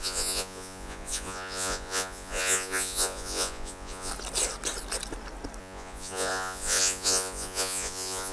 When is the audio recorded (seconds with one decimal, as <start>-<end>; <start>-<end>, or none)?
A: 4.1-5.6